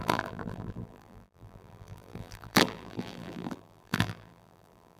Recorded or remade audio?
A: remade